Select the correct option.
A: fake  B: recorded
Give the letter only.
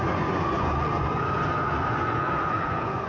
A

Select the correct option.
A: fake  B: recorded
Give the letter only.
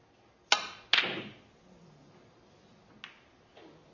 B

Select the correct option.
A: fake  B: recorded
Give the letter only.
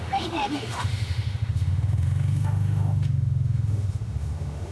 A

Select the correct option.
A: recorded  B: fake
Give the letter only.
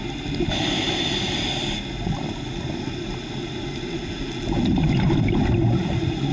A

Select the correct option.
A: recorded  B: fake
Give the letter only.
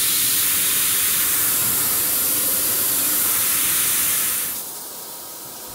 B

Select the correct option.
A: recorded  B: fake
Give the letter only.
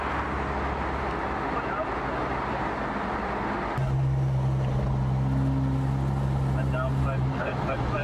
A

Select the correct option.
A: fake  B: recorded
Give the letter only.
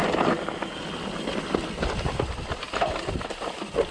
B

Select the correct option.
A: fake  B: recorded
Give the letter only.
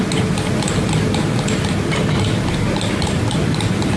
B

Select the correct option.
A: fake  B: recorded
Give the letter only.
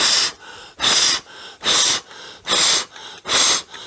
B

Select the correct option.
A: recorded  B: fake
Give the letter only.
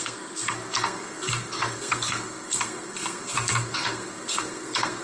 B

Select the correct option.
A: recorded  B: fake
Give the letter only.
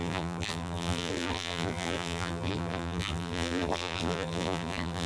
B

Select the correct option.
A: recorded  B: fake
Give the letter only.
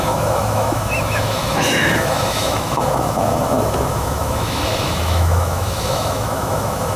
B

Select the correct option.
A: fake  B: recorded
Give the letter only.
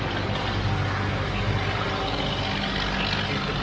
B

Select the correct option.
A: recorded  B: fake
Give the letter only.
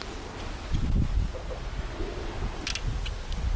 A